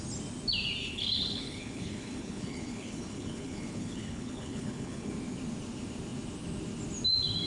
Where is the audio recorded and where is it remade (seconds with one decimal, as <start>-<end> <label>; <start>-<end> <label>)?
0.0-0.8 recorded; 0.8-5.1 remade; 5.1-7.5 recorded